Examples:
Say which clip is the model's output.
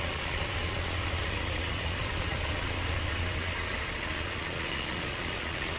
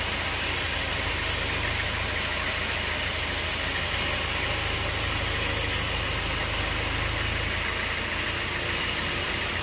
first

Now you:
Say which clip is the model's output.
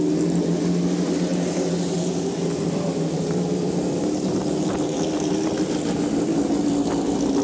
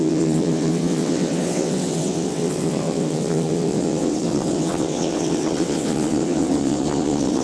second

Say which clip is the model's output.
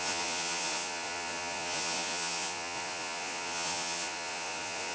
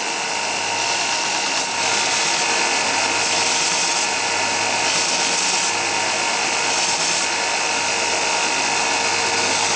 first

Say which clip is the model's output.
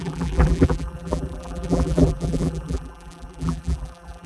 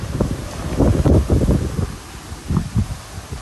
first